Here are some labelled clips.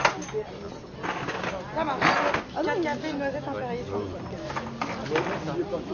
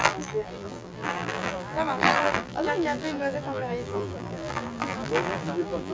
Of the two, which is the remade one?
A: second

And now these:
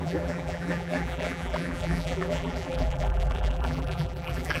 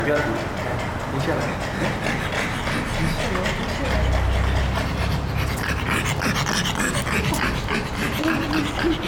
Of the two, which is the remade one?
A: first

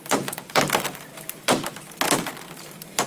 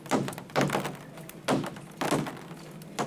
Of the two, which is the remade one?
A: first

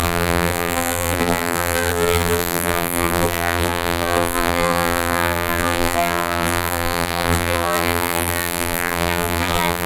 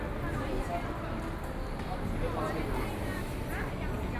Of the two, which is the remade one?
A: first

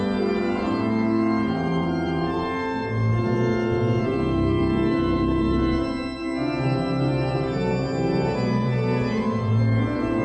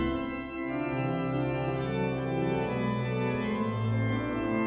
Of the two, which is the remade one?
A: first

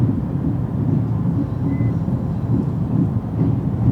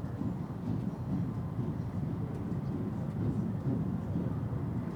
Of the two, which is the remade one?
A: first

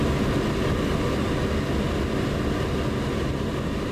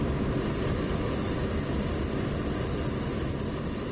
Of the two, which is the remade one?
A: second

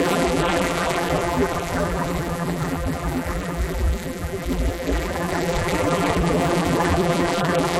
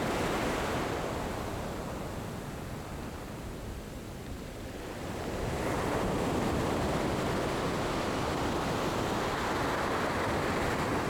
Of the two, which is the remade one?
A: first